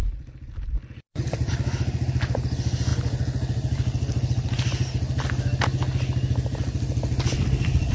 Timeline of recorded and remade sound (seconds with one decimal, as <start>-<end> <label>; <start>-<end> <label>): 0.0-1.5 remade; 1.5-7.9 recorded